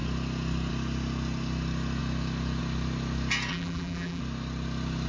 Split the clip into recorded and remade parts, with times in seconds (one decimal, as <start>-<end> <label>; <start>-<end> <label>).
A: 0.0-3.5 recorded; 3.5-4.2 remade; 4.2-5.1 recorded